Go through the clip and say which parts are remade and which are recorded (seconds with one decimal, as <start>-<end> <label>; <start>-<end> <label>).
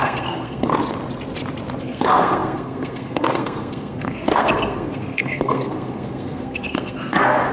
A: 0.0-0.7 remade; 0.7-1.8 recorded; 1.8-7.5 remade